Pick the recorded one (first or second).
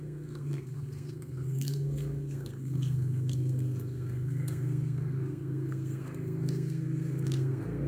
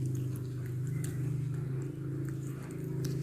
second